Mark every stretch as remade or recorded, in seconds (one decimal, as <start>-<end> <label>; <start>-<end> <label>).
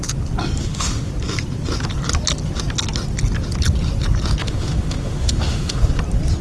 0.0-0.6 recorded; 0.6-1.1 remade; 1.1-4.4 recorded; 4.4-5.9 remade; 5.9-6.4 recorded